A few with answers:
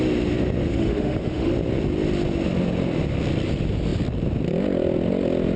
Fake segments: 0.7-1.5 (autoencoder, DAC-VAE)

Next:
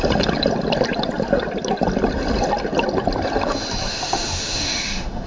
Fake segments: 3.9-5.3 (autoencoder, DAC-VAE)

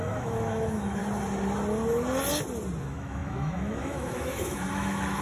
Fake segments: 0.0-1.0 (autoencoder, DAC-VAE); 2.8-5.2

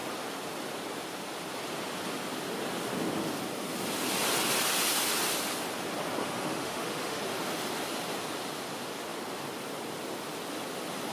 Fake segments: 6.2-7.2 (autoencoder, DAC-VAE)